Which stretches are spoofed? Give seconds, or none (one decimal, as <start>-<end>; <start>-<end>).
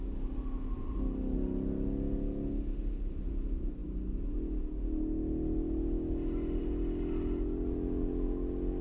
none